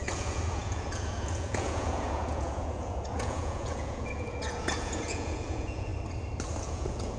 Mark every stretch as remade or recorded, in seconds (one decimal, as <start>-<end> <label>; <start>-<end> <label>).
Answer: 0.0-5.9 remade; 5.9-6.6 recorded; 6.6-7.2 remade